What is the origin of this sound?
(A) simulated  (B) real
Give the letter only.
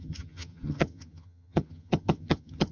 A